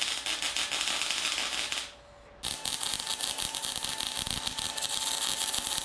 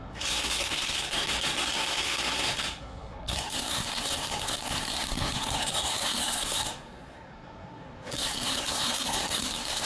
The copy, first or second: second